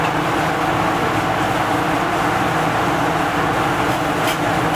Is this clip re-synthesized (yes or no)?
no